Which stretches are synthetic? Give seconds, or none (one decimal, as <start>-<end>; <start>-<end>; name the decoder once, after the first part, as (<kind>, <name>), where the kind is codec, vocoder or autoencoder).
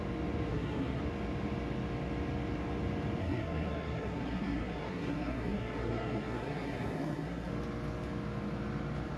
0.5-1.0 (codec, SNAC); 3.2-7.5